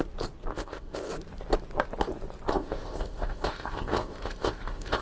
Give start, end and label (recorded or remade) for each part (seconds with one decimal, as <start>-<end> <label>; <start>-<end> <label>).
0.0-0.5 recorded; 0.5-1.1 remade; 1.1-2.5 recorded; 2.5-5.0 remade